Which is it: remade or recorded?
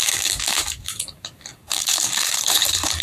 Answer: remade